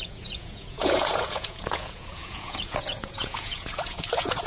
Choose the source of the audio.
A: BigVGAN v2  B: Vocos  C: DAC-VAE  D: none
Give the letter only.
B